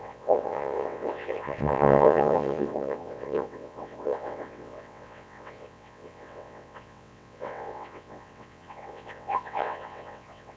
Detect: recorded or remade remade